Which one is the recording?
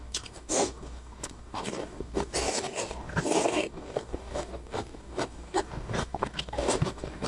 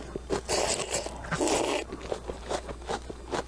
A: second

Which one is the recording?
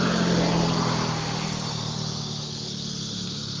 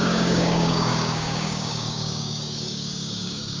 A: first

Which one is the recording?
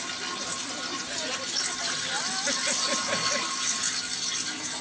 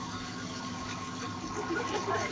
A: first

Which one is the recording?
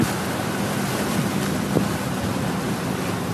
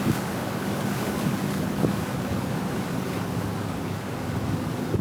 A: first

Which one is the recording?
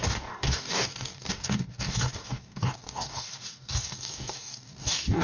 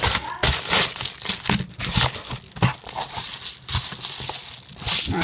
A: second